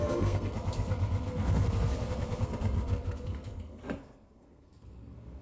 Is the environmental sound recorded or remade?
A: remade